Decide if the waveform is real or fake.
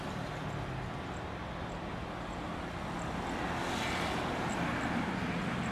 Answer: real